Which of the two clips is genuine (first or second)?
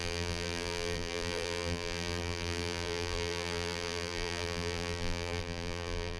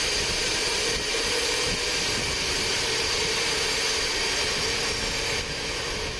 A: second